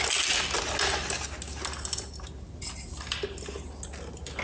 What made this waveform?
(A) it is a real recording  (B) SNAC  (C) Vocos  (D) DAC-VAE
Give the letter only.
A